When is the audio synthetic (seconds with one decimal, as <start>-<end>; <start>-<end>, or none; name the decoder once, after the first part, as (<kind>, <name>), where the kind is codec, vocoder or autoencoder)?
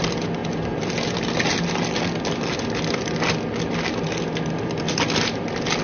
none